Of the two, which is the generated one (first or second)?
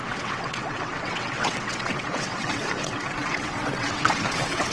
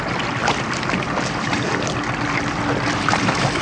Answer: first